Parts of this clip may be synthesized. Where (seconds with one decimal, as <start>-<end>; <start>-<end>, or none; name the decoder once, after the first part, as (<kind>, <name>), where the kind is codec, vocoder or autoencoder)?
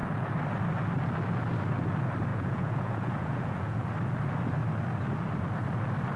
2.3-3.8 (vocoder, Vocos)